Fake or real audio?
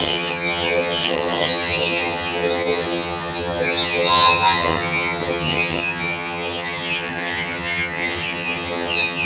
fake